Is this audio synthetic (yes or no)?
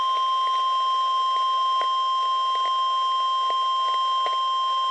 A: no